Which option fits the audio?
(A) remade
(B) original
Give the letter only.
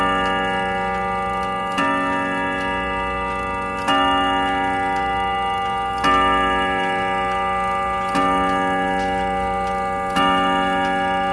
B